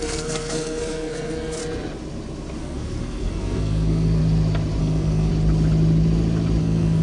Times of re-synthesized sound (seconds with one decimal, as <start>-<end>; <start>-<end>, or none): 0.0-1.6; 2.6-4.2; 4.8-5.3; 6.6-7.0